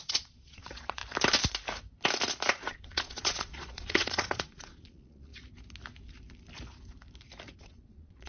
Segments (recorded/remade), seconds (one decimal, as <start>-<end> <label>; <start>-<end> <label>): 0.0-1.0 remade; 1.0-2.7 recorded; 2.7-5.3 remade; 5.3-7.6 recorded; 7.6-8.3 remade